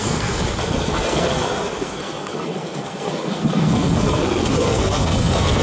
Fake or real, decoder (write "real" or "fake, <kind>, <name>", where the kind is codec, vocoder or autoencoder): fake, codec, SNAC